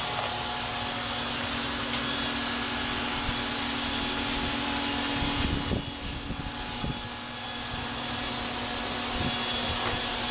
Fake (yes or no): no